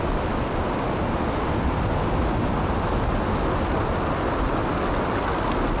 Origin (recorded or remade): recorded